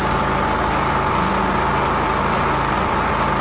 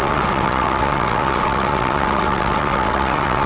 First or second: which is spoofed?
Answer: second